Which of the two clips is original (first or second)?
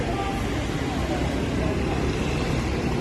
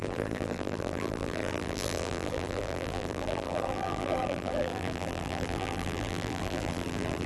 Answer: first